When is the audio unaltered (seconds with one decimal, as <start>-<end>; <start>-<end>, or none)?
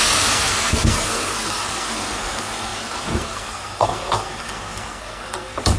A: none